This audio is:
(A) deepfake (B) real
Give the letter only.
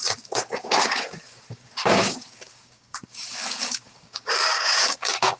A